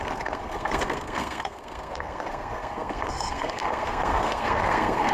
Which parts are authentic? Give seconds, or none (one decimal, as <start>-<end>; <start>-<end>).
none